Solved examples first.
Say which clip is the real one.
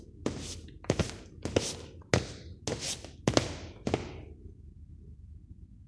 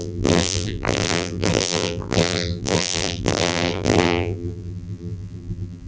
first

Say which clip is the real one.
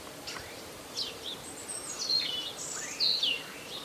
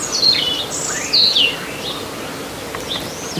second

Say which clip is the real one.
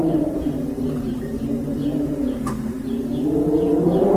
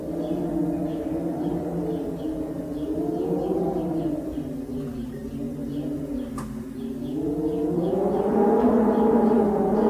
second